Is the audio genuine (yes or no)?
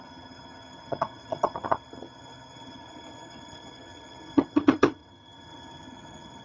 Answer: no